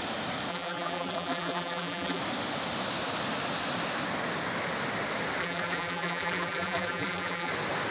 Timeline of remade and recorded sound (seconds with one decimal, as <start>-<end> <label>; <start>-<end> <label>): 0.0-0.5 recorded; 0.5-2.2 remade; 2.2-5.4 recorded; 5.4-7.5 remade; 7.5-7.9 recorded